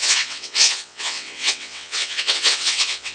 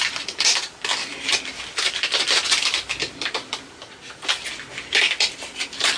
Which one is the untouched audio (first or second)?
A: second